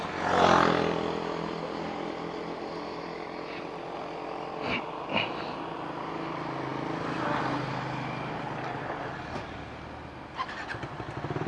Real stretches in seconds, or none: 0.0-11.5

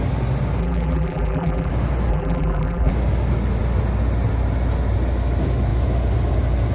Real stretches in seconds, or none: 0.0-0.6; 1.7-2.1; 2.9-6.7

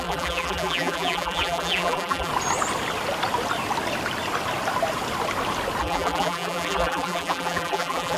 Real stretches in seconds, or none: 2.3-5.8